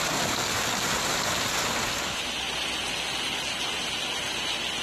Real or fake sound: real